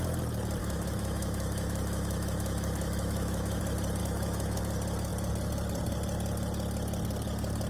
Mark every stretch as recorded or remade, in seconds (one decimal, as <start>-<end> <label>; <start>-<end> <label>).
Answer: 0.0-0.6 recorded; 0.6-3.6 remade; 3.6-4.0 recorded; 4.0-4.6 remade; 4.6-7.7 recorded